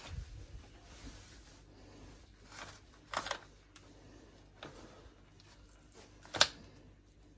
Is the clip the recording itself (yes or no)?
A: yes